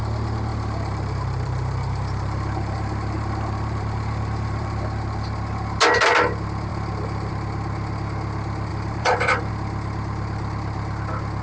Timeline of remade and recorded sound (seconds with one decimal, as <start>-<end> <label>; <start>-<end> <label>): 0.0-0.5 recorded; 0.5-4.8 remade; 4.8-6.7 recorded; 6.7-7.3 remade; 7.3-8.7 recorded; 8.7-9.5 remade; 9.5-11.4 recorded